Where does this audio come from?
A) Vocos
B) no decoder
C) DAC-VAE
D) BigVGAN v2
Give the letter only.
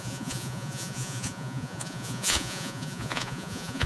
A